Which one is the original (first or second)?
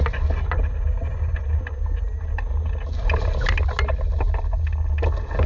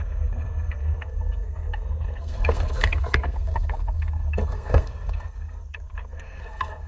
first